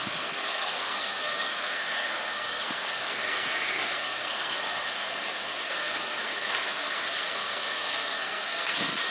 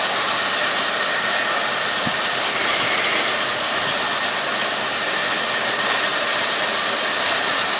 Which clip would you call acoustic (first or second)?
second